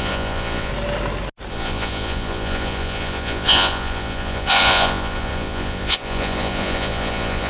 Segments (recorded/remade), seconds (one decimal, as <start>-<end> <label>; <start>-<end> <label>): 0.0-0.7 remade; 0.7-1.5 recorded; 1.5-7.5 remade